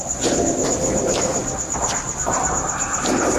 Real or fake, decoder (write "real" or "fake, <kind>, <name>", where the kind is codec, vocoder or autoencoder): real